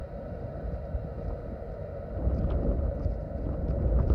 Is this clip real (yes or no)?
yes